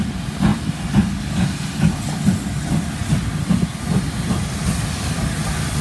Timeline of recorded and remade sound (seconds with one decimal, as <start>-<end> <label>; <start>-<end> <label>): 0.0-5.8 recorded